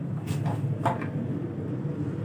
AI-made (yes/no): no